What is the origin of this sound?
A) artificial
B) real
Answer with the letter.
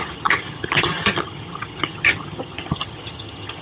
A